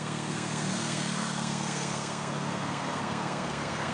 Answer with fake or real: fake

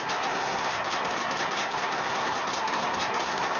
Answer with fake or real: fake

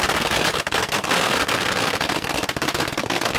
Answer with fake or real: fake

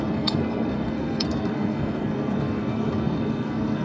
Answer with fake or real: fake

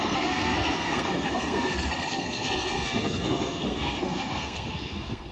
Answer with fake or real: fake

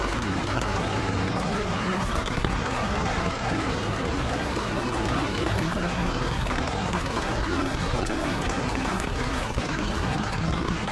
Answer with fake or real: fake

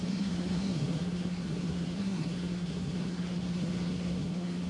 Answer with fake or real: fake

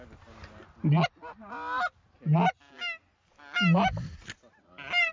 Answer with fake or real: real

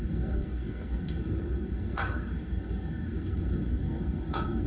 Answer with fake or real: fake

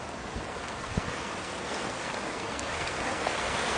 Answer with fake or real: fake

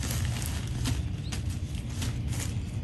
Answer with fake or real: real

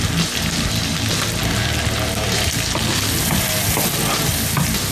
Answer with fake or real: real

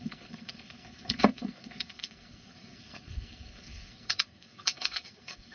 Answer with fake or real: fake